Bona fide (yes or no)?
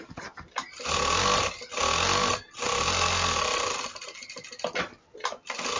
yes